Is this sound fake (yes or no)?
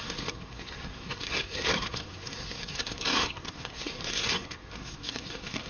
yes